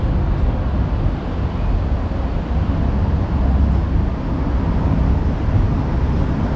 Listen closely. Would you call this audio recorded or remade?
recorded